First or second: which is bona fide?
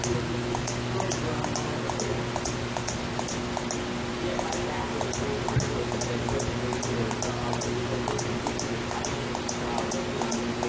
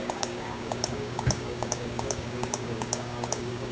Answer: first